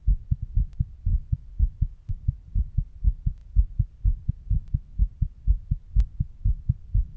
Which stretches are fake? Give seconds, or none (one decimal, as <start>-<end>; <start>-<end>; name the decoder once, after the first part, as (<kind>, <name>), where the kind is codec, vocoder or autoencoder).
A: none